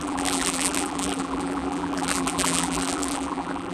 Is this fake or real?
fake